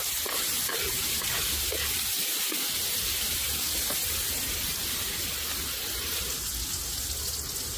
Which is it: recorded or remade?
recorded